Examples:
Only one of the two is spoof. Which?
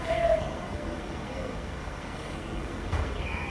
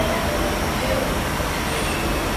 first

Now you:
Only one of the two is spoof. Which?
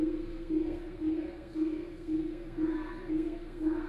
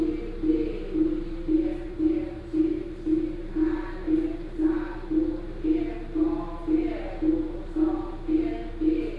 first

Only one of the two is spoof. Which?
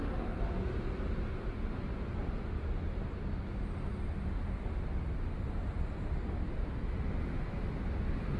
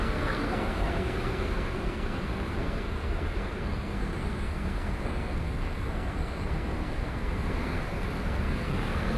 second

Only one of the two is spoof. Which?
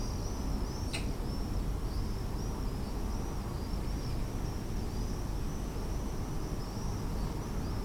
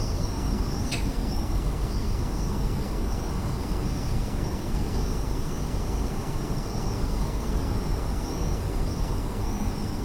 second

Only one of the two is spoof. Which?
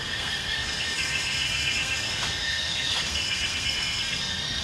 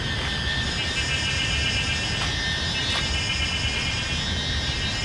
first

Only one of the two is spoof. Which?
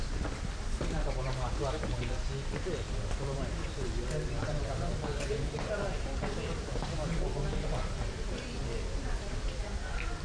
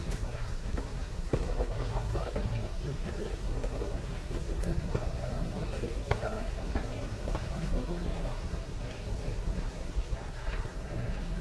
second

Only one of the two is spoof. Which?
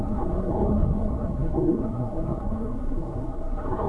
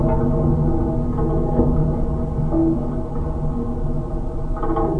first